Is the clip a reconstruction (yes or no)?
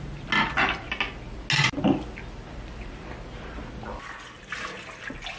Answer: no